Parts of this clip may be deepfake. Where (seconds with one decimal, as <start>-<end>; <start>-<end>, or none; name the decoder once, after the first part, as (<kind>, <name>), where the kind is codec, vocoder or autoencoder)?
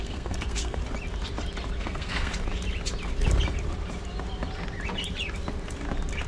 0.0-0.8 (codec, SNAC); 1.8-2.3